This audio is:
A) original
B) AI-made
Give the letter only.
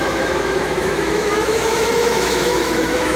B